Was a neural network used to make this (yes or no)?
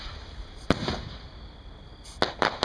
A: no